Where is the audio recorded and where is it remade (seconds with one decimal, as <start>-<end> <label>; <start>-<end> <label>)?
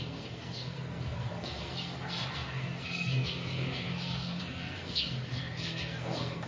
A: 0.0-6.5 remade